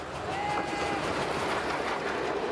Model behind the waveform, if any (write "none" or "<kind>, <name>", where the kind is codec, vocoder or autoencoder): none